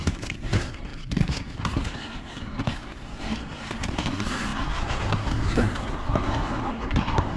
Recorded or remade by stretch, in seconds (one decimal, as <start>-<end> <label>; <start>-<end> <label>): 0.0-7.4 remade